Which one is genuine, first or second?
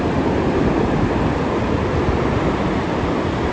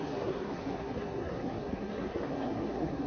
first